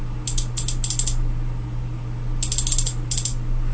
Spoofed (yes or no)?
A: no